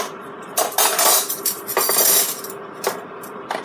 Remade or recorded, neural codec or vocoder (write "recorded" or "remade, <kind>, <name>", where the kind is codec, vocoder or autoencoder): recorded